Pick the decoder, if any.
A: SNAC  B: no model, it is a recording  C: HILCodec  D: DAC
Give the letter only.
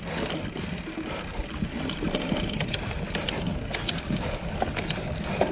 B